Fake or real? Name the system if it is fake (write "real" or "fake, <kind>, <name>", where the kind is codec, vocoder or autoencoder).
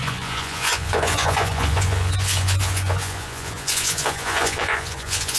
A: fake, vocoder, Vocos